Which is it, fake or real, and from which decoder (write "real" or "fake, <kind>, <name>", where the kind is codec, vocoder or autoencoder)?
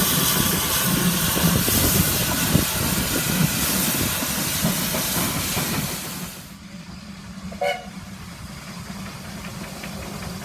real